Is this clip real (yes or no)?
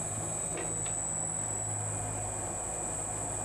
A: yes